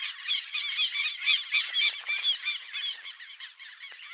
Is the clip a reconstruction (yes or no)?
no